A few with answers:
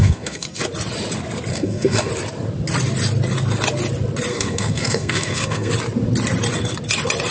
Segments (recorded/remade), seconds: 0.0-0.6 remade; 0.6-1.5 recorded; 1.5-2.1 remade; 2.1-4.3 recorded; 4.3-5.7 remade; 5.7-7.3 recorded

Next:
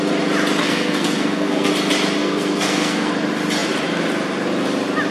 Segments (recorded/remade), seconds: 0.0-0.6 recorded; 0.6-1.7 remade; 1.7-2.2 recorded; 2.2-3.1 remade; 3.1-5.1 recorded

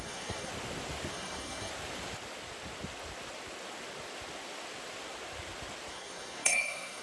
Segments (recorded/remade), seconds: 0.0-0.5 remade; 0.5-1.1 recorded; 1.1-1.7 remade; 1.7-5.9 recorded; 5.9-7.0 remade

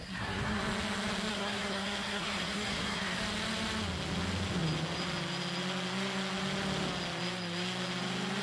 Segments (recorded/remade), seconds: 0.0-0.6 remade; 0.6-1.3 recorded; 1.3-3.2 remade; 3.2-8.4 recorded

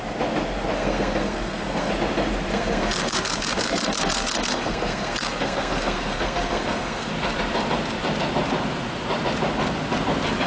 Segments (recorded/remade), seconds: 0.0-0.8 recorded; 0.8-1.9 remade; 1.9-2.5 recorded; 2.5-7.1 remade; 7.1-10.5 recorded

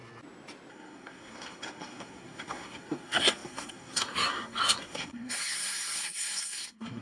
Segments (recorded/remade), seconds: 0.0-0.7 recorded; 0.7-7.0 remade